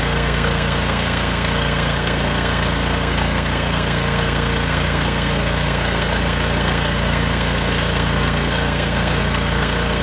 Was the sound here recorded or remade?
remade